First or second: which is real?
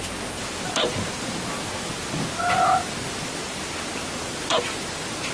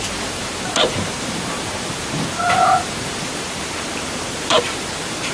first